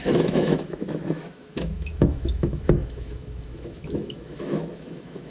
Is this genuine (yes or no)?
no